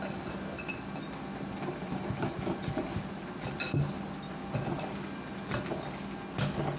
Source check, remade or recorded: recorded